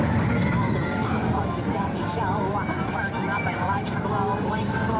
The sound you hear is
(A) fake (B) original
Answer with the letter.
B